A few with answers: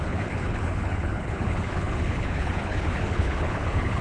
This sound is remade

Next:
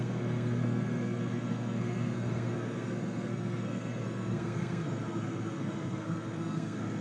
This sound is remade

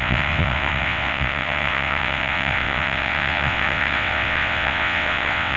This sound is remade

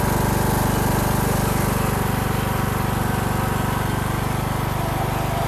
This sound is recorded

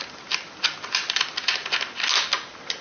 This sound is recorded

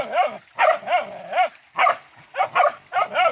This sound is recorded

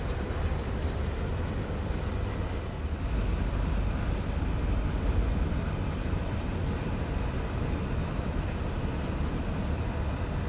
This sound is recorded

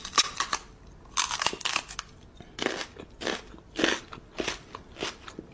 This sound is recorded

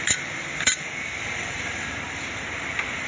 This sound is recorded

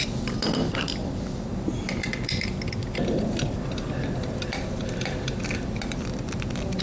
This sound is remade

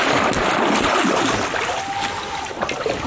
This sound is recorded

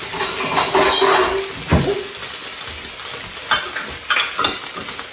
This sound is recorded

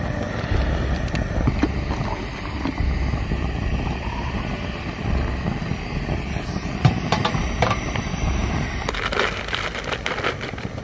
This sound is recorded